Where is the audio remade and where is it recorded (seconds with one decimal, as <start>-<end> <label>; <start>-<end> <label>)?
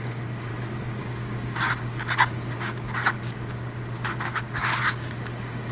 0.0-0.5 remade; 0.5-1.0 recorded; 1.0-5.7 remade